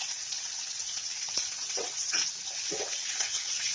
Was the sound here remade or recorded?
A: remade